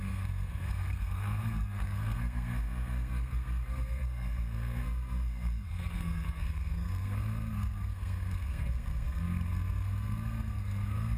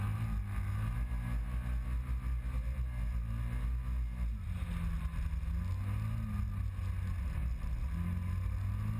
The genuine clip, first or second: second